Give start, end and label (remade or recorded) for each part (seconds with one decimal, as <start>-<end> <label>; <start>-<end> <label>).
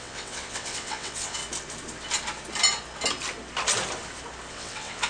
0.0-1.4 remade; 1.4-4.5 recorded; 4.5-5.1 remade